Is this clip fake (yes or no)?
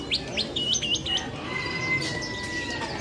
no